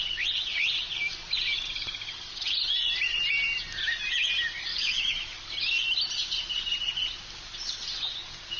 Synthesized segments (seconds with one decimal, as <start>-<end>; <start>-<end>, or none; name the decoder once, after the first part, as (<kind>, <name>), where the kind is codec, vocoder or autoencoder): 4.7-5.3 (autoencoder, DAC-VAE)